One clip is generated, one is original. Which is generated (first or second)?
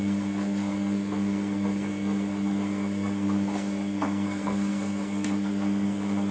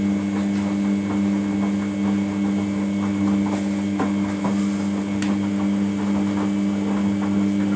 first